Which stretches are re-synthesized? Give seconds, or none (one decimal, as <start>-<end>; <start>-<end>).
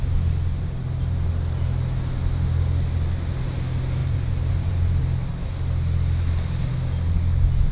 4.0-5.0